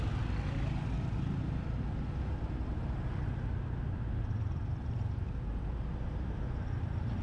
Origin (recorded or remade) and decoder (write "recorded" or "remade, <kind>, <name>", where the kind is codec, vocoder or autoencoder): recorded